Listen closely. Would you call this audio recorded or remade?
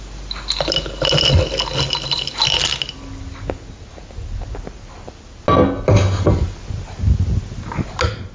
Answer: recorded